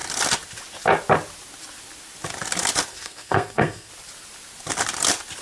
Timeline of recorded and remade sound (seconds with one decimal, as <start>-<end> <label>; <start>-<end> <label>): 0.0-2.9 recorded; 2.9-3.9 remade; 3.9-5.4 recorded